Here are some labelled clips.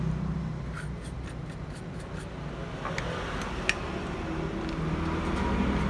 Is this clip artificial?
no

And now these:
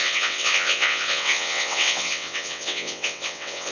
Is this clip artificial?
yes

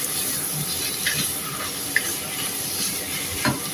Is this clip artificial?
yes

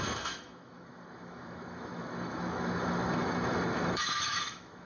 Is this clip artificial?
yes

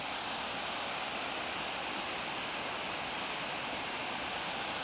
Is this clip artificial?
no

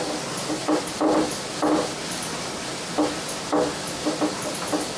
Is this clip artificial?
no